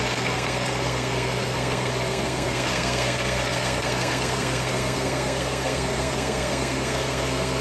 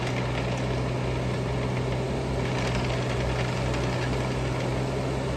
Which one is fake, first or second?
first